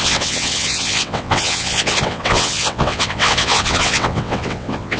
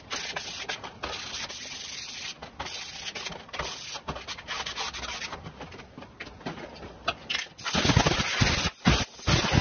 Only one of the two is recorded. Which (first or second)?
second